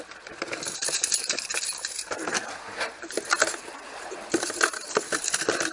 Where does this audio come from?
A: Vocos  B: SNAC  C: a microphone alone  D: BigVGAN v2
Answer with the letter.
D